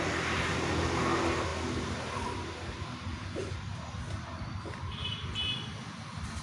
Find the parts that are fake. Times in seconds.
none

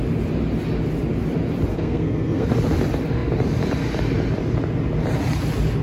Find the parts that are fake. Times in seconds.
1.7-2.5 (codec, SNAC)